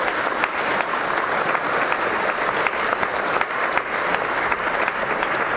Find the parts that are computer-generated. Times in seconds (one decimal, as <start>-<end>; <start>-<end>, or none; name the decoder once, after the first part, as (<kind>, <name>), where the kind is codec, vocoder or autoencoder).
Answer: none

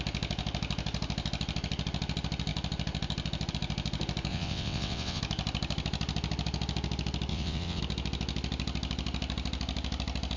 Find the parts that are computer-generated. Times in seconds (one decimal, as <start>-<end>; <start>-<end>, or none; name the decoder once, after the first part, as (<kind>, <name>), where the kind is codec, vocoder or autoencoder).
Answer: 4.3-5.2 (vocoder, WaveNeXt); 7.3-7.8

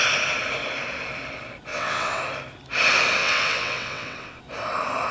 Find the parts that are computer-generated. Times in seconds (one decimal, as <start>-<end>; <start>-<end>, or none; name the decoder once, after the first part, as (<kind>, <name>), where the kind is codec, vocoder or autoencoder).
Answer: 1.7-2.2 (vocoder, WaveNeXt); 3.2-4.4

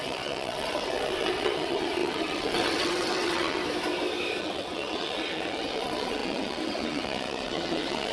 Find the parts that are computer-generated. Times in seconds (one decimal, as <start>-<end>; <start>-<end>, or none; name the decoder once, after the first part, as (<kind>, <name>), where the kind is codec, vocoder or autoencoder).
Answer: 0.0-3.6 (vocoder, WaveNeXt); 4.4-8.1

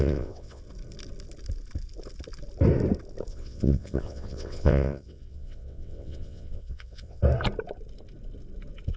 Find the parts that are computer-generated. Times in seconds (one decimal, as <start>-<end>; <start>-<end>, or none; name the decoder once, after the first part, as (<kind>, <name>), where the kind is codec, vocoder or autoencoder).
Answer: 0.0-0.6 (vocoder, WaveNeXt); 3.3-7.2

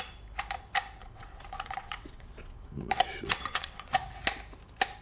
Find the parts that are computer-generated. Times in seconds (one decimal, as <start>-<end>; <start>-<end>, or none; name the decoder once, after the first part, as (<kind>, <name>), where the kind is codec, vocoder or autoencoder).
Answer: 1.0-4.0 (vocoder, WaveNeXt)

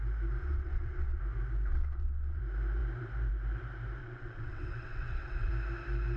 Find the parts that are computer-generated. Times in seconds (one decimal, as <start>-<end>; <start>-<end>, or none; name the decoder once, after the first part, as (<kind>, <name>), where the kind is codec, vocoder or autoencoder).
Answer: 0.4-1.2 (vocoder, WaveNeXt); 1.7-2.4; 4.0-5.5

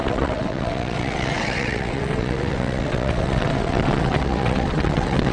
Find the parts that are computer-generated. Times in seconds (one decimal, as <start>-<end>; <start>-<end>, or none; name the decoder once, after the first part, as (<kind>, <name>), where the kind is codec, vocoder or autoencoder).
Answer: 0.0-5.3 (vocoder, WaveNeXt)